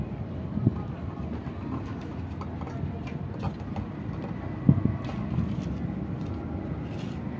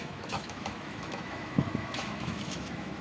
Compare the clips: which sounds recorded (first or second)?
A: first